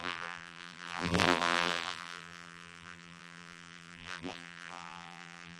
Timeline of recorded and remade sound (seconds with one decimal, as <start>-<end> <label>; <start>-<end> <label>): 0.0-5.6 remade